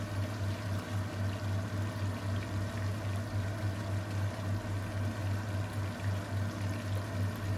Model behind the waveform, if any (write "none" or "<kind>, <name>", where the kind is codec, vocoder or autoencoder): none